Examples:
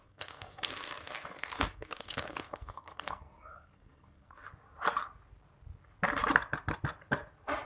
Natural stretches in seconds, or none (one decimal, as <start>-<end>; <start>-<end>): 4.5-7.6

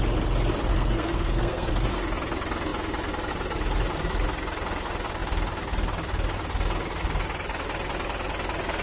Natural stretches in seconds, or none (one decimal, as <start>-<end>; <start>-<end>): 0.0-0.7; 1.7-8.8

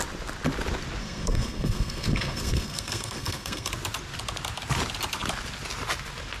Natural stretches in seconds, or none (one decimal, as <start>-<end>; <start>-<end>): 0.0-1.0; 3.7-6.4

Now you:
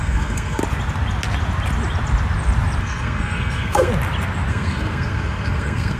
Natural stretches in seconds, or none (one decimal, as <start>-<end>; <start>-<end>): 0.6-2.8; 3.9-4.5

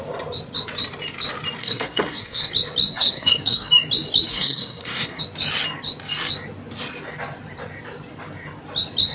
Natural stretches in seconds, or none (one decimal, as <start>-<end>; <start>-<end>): 0.0-1.6; 2.5-2.9; 3.7-4.3; 5.2-9.1